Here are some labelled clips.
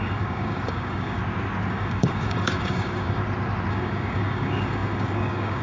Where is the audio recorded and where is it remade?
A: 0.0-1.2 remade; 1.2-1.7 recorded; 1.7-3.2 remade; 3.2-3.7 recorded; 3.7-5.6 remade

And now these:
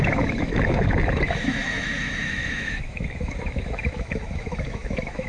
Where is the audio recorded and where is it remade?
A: 0.0-5.3 remade

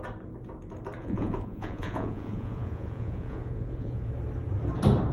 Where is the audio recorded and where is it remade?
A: 0.0-1.0 recorded; 1.0-4.1 remade; 4.1-5.1 recorded

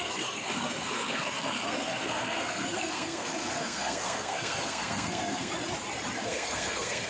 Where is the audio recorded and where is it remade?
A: 0.0-5.5 remade; 5.5-6.2 recorded; 6.2-7.1 remade

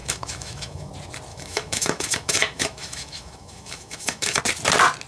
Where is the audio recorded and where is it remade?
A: 0.0-0.9 remade; 0.9-1.3 recorded; 1.3-4.4 remade; 4.4-5.1 recorded

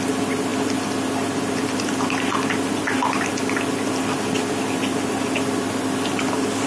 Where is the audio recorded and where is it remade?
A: 0.0-6.7 recorded